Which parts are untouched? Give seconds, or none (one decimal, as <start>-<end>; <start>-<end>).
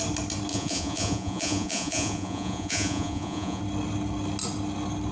0.0-0.5; 3.6-5.1